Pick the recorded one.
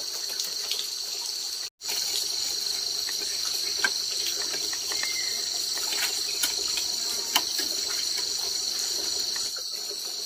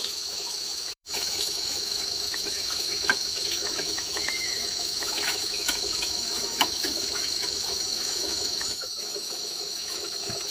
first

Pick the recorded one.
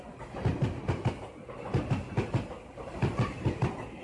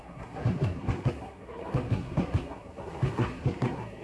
first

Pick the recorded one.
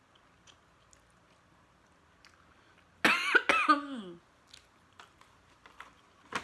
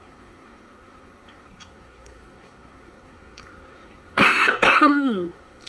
first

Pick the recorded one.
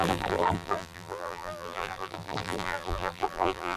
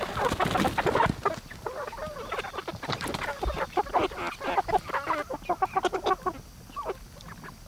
second